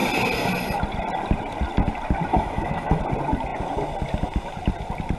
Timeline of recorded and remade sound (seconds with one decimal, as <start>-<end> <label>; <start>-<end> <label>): 0.0-2.3 recorded; 2.3-3.0 remade; 3.0-5.2 recorded